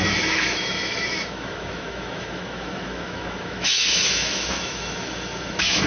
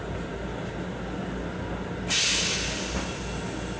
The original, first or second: second